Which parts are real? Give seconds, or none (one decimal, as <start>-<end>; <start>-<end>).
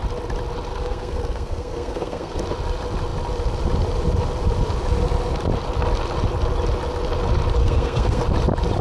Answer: 0.0-0.7; 2.4-7.6; 8.2-8.8